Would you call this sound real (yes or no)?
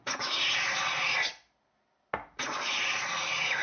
yes